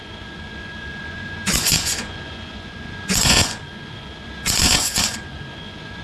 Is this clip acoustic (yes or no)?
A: no